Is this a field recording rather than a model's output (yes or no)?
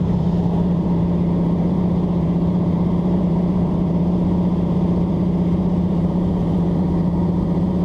no